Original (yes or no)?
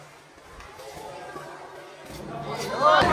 yes